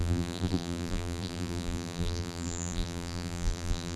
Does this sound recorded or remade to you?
remade